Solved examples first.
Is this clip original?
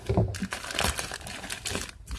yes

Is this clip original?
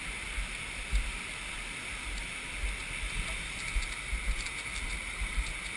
yes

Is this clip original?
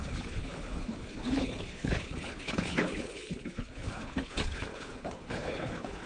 no